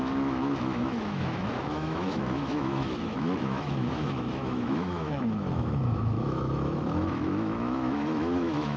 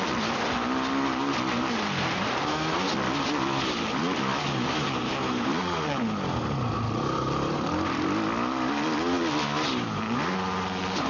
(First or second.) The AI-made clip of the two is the first